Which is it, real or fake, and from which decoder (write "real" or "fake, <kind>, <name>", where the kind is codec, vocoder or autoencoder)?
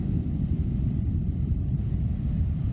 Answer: real